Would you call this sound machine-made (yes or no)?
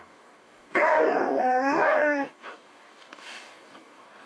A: yes